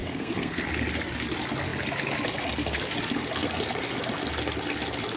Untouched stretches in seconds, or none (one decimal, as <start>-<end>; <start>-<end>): 0.6-5.2